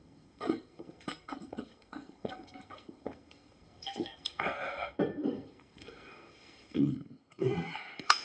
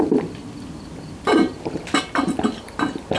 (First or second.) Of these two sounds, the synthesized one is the first